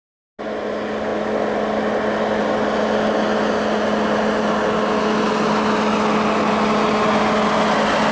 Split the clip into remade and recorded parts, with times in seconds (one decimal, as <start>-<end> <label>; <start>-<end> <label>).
0.0-8.1 recorded